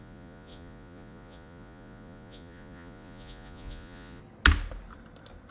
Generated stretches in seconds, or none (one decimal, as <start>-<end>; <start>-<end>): 0.0-4.2